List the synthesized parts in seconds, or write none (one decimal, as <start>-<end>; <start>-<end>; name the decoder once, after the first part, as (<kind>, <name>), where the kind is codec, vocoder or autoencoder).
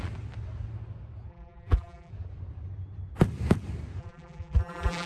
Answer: 1.3-2.1 (vocoder, BigVGAN v2); 4.0-5.1